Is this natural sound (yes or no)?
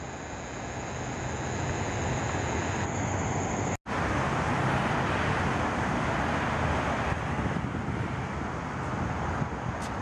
yes